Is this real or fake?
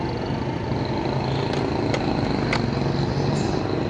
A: real